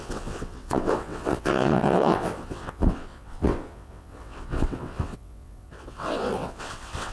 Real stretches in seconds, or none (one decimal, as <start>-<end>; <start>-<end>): none